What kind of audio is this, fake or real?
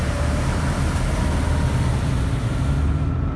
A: real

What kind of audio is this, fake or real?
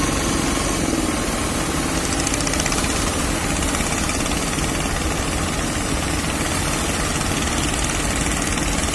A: real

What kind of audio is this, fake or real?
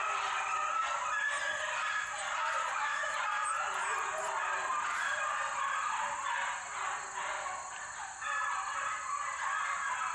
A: real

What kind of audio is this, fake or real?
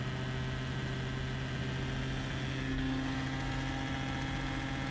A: real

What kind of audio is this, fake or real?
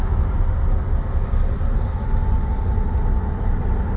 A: real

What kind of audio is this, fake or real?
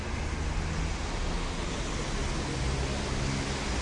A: real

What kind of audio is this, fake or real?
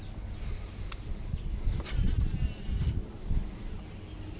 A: real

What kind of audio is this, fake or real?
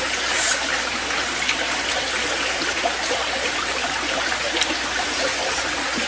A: real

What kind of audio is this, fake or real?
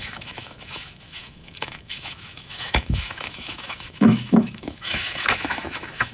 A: fake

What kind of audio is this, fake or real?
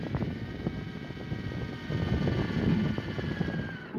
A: real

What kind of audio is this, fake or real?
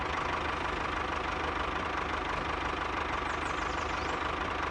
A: real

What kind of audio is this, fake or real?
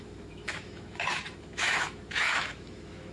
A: fake